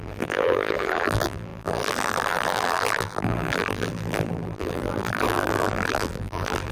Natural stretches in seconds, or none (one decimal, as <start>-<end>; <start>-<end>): none